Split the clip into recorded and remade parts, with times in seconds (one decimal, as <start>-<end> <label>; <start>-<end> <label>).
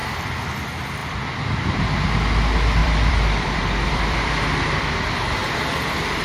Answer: 0.0-0.6 remade; 0.6-2.8 recorded; 2.8-4.9 remade; 4.9-6.2 recorded